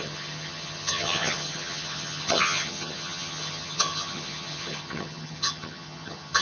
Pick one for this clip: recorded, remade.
remade